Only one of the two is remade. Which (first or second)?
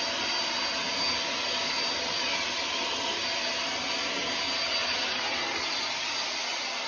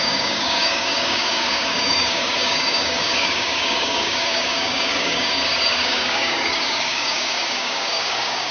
second